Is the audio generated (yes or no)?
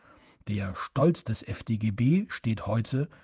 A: yes